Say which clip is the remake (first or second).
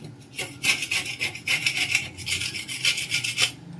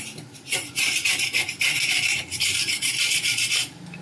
second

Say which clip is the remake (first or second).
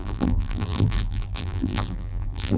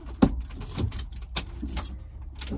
first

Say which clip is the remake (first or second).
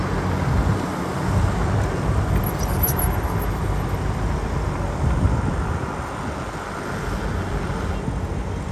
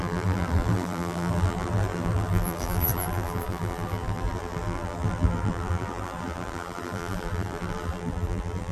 second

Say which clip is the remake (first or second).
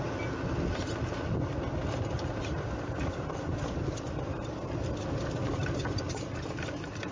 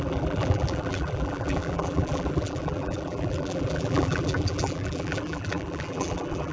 second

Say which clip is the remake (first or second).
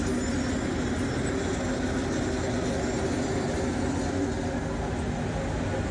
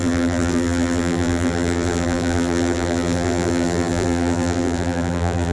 second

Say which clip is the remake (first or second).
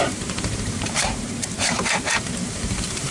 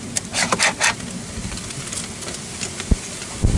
first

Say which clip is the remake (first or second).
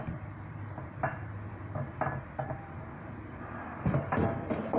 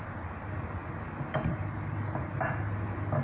first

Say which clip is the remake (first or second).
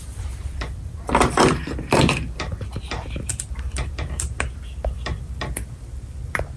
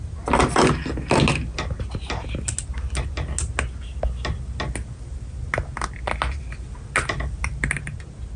first